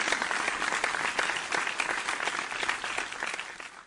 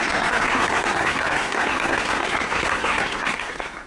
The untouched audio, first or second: first